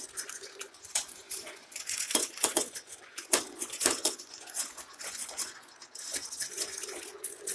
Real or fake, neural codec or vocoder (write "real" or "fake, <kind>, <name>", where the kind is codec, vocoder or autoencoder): fake, vocoder, Vocos